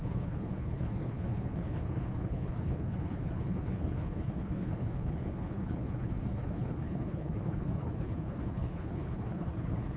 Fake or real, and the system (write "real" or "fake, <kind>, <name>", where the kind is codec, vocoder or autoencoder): fake, codec, HILCodec